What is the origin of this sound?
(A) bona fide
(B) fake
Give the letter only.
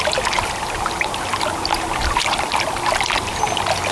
A